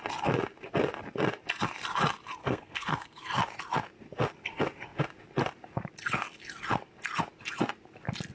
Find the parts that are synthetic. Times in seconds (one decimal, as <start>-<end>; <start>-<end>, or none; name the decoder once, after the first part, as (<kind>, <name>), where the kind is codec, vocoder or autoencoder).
2.4-3.2 (codec, SNAC)